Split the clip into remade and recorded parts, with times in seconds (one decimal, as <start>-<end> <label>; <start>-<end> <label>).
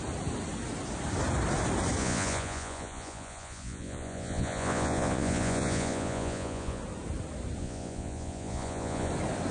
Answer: 0.0-2.0 recorded; 2.0-6.8 remade; 6.8-7.6 recorded; 7.6-9.1 remade; 9.1-9.5 recorded